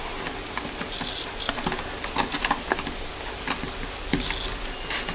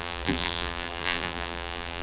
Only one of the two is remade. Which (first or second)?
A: second